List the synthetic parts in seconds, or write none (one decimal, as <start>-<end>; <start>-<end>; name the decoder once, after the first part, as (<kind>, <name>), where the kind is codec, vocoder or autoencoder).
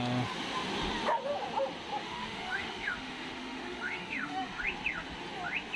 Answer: 2.0-4.6 (autoencoder, DAC-VAE)